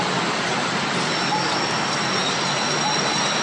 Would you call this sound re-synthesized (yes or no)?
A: no